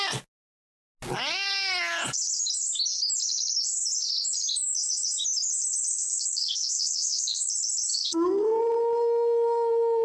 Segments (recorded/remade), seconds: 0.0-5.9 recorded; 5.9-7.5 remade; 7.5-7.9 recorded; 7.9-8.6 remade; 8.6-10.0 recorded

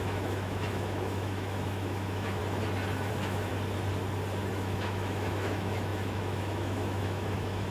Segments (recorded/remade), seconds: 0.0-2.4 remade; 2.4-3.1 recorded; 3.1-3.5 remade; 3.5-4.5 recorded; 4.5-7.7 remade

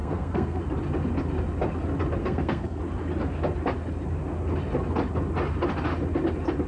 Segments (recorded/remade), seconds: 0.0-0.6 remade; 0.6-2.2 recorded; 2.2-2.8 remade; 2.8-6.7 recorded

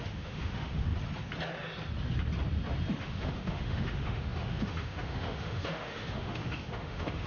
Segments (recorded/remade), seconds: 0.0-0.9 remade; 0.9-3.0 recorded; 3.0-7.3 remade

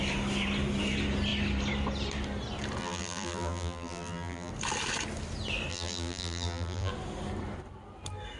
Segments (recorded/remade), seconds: 0.0-2.8 recorded; 2.8-4.5 remade; 4.5-5.7 recorded; 5.7-6.9 remade; 6.9-8.4 recorded

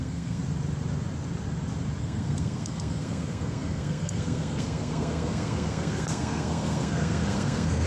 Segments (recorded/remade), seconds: 0.0-0.4 remade; 0.4-2.0 recorded; 2.0-7.9 remade

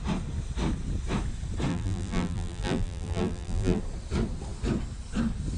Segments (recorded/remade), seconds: 0.0-1.7 recorded; 1.7-3.8 remade; 3.8-5.6 recorded

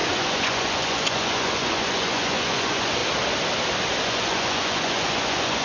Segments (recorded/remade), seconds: 0.0-3.0 remade; 3.0-4.0 recorded; 4.0-5.6 remade